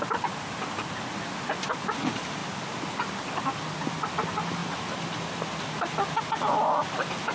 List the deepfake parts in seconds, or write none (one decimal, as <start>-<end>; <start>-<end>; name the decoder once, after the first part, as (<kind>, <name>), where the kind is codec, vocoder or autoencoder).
none